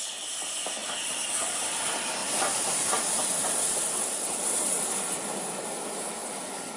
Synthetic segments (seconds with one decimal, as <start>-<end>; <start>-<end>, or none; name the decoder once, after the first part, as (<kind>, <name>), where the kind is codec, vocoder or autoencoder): 2.2-3.8 (vocoder, BigVGAN v2)